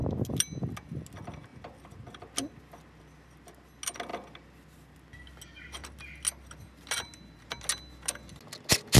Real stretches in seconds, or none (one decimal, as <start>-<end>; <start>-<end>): 0.0-9.0

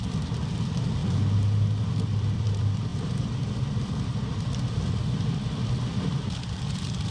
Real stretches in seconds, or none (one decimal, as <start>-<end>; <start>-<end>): 1.0-1.9; 2.9-6.0

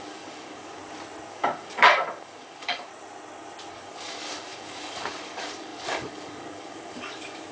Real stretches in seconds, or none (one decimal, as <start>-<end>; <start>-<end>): 0.8-1.3; 2.9-3.7

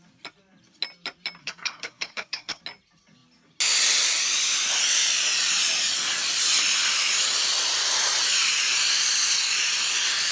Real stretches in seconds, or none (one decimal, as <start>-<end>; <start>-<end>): 0.0-1.4; 2.6-10.3

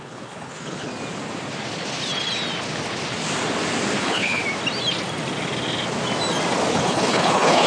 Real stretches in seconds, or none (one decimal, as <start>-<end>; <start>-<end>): 0.9-4.0; 4.4-6.7